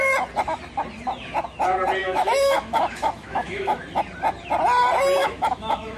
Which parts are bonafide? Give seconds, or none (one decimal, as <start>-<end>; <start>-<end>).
0.0-2.0; 3.8-5.2